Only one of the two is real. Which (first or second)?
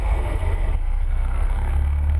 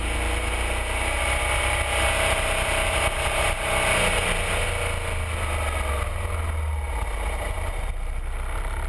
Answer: second